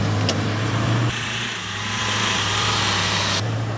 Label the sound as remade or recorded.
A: remade